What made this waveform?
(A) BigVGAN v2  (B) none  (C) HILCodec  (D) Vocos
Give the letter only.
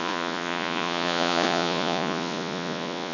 D